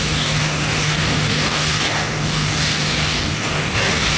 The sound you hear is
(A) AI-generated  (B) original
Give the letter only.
A